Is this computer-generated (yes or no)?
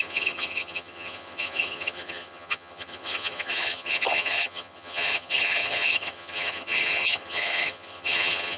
yes